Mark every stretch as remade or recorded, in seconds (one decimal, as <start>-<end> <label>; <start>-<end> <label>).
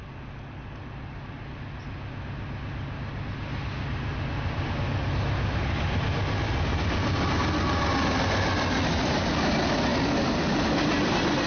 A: 0.0-11.5 recorded